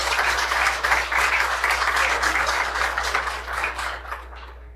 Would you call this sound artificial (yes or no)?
yes